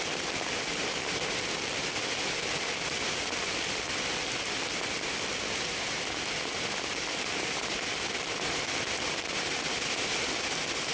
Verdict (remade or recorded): recorded